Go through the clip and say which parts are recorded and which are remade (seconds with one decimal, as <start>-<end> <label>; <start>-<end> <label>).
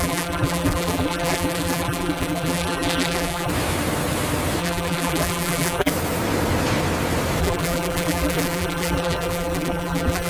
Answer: 0.0-3.5 remade; 3.5-4.6 recorded; 4.6-5.9 remade; 5.9-7.4 recorded; 7.4-10.3 remade